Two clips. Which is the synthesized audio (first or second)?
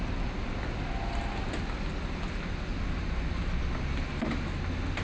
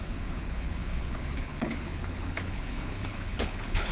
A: second